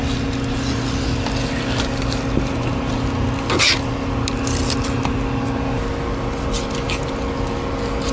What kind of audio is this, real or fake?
real